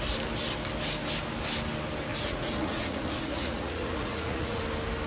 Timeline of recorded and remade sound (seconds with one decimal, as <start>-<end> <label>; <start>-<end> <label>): 0.0-2.1 recorded; 2.1-4.6 remade; 4.6-5.1 recorded